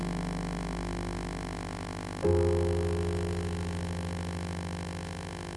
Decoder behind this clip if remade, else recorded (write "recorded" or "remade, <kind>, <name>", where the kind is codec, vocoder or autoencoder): recorded